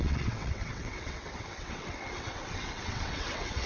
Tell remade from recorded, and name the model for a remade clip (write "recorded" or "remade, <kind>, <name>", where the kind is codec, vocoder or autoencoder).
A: remade, vocoder, WaveNeXt